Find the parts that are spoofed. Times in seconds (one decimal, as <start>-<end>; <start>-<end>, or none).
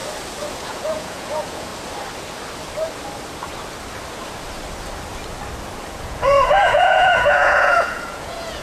0.6-1.7; 5.9-8.6